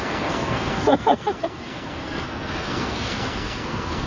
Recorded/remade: remade